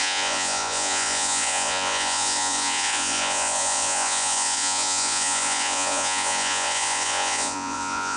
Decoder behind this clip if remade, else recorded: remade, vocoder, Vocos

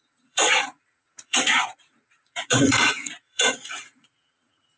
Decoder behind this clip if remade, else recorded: remade, vocoder, Vocos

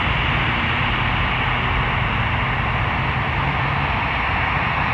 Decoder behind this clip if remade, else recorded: recorded